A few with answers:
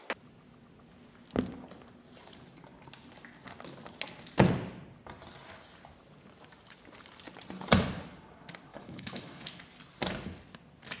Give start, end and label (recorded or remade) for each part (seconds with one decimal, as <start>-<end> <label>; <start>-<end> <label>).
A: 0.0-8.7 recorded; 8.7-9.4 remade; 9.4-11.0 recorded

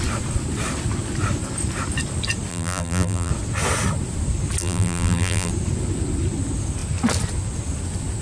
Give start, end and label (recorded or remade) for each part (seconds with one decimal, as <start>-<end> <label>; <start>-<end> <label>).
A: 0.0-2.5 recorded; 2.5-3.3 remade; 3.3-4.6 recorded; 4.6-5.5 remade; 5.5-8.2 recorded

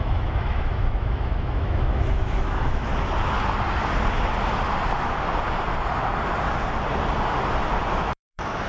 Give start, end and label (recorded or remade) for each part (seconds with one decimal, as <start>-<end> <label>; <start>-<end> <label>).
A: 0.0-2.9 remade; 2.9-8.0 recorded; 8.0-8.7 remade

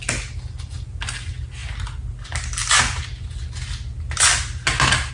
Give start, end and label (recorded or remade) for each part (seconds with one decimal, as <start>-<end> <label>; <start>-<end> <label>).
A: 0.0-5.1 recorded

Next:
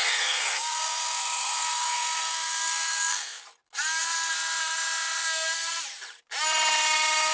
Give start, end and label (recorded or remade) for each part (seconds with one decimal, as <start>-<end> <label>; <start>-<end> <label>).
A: 0.0-3.4 remade; 3.4-7.3 recorded

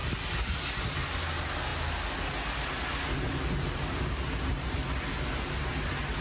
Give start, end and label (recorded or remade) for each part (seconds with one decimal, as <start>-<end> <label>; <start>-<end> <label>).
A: 0.0-6.2 recorded